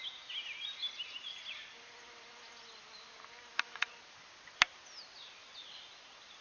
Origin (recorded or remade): recorded